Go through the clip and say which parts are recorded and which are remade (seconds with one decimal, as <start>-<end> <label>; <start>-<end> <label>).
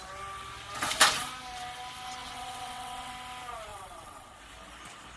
0.0-2.2 recorded; 2.2-3.1 remade; 3.1-3.7 recorded; 3.7-4.4 remade; 4.4-5.2 recorded